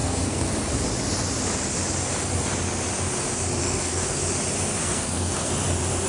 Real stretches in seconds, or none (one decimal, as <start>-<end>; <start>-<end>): 0.5-3.6; 4.2-4.8; 5.5-6.1